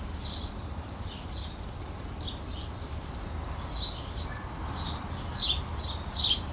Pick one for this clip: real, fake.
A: real